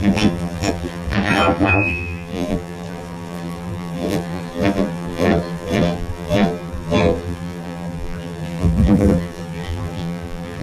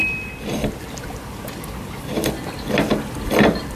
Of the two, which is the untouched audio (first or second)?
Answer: second